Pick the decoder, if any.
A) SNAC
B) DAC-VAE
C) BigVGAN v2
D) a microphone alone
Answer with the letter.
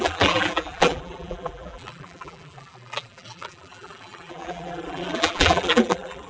C